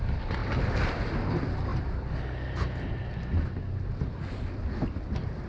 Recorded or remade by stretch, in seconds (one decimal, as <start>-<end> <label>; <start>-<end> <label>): 0.0-0.4 recorded; 0.4-1.1 remade; 1.1-5.5 recorded